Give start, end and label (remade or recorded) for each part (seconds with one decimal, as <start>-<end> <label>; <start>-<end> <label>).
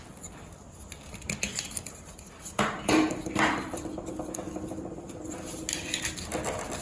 0.0-1.5 recorded; 1.5-5.6 remade; 5.6-6.8 recorded